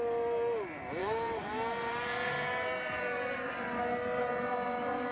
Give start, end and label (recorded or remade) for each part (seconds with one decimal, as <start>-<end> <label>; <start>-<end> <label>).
0.0-1.0 recorded; 1.0-3.5 remade; 3.5-5.1 recorded